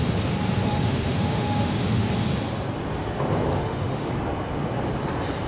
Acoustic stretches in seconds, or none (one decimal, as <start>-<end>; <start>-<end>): 0.0-0.6; 2.1-3.5; 4.1-5.5